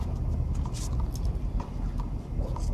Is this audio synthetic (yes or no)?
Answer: no